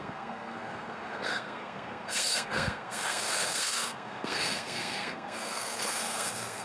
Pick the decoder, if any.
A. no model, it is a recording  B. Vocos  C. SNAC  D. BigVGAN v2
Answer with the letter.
C